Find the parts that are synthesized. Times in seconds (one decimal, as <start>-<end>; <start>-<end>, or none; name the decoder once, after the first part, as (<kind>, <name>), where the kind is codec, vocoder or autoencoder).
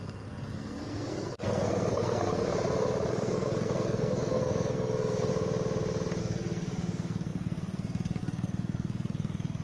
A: 0.0-2.5 (codec, SNAC); 3.1-5.3; 6.2-9.6